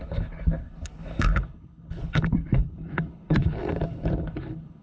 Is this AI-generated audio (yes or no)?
yes